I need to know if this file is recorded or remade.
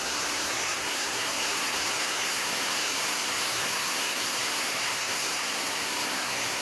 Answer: remade